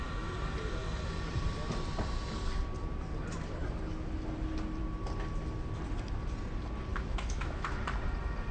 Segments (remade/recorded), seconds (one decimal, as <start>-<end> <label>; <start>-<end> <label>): 0.0-6.9 recorded; 6.9-7.8 remade; 7.8-8.5 recorded